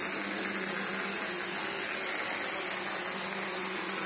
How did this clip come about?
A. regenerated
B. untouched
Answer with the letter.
B